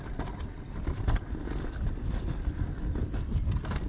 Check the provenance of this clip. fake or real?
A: real